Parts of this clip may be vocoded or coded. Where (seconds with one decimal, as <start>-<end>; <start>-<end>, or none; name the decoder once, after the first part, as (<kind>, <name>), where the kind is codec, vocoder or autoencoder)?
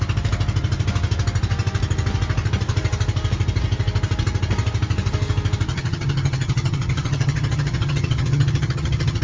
5.7-9.2 (vocoder, HiFi-GAN)